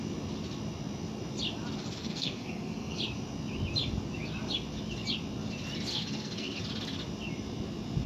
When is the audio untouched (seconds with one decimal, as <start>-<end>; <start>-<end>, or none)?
0.0-1.8; 3.0-5.9; 6.6-8.1